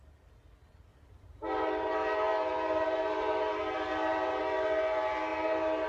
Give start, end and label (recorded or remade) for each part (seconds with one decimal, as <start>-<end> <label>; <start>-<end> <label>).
0.0-0.9 recorded; 0.9-4.4 remade; 4.4-5.3 recorded; 5.3-5.9 remade